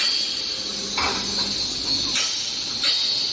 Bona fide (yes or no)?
yes